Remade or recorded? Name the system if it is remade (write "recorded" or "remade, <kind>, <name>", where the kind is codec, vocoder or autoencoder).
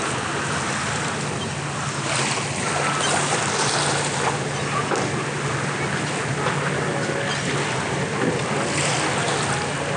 recorded